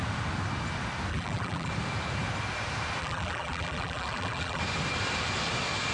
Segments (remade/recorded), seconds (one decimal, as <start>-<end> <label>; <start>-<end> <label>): 0.0-1.1 recorded; 1.1-1.7 remade; 1.7-3.0 recorded; 3.0-4.6 remade; 4.6-5.9 recorded